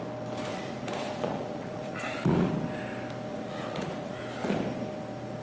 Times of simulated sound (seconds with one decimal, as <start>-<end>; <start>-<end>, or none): 0.5-2.5; 3.3-4.2